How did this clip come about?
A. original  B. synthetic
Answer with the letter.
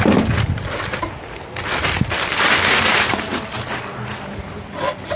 A